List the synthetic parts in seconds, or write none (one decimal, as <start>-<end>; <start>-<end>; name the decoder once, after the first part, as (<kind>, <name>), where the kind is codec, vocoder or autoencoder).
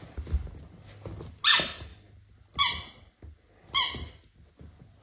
none